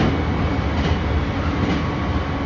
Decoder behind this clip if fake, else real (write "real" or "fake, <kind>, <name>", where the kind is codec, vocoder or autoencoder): real